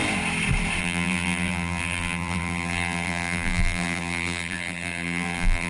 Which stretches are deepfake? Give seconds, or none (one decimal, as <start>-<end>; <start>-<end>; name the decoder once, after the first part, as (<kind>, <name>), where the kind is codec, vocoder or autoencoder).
0.8-5.7 (vocoder, BigVGAN v2)